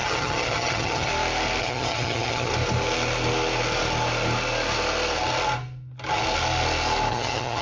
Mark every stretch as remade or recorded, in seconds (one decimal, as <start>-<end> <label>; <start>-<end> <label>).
0.0-1.1 remade; 1.1-1.6 recorded; 1.6-2.5 remade; 2.5-7.1 recorded; 7.1-7.6 remade